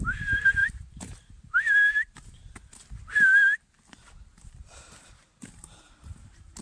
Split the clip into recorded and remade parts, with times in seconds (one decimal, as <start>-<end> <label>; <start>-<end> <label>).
0.0-2.4 remade; 2.4-4.4 recorded; 4.4-6.6 remade